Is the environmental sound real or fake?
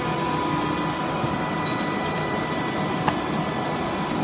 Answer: real